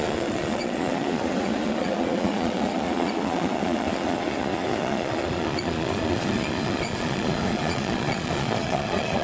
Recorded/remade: remade